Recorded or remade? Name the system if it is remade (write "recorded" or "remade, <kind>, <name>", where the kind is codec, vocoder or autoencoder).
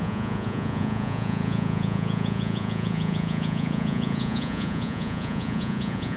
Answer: remade, vocoder, Vocos